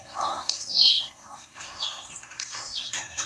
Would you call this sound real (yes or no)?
no